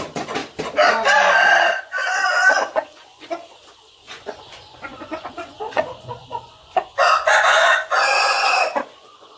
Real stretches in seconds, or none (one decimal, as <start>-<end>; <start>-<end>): 0.4-1.8